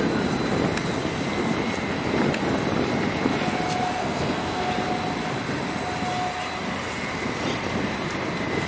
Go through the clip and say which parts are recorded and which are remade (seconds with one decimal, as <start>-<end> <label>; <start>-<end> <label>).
0.0-4.0 recorded; 4.0-4.7 remade; 4.7-8.7 recorded